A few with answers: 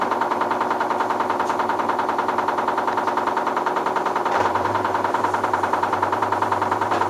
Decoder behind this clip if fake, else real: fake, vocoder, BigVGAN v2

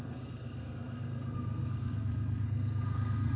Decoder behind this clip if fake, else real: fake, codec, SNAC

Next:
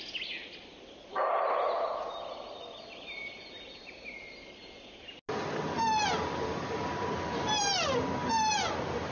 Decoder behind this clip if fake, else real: real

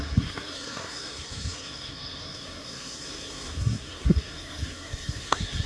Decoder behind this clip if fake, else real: fake, codec, SNAC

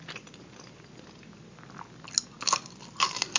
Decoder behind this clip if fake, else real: real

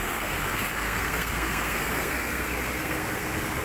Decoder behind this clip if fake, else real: fake, codec, SNAC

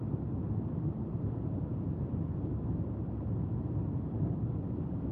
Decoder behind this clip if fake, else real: real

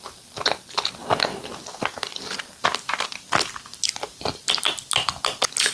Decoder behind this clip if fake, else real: real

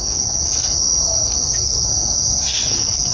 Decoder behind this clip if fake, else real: fake, codec, SNAC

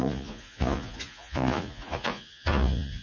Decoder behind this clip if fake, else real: fake, vocoder, Vocos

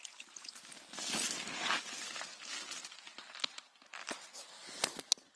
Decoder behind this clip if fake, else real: real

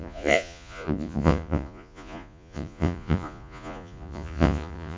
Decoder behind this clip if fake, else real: fake, vocoder, Vocos